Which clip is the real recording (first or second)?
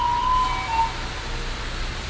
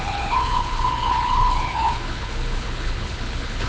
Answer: first